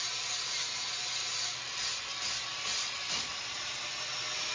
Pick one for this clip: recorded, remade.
recorded